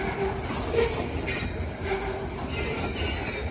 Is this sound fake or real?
real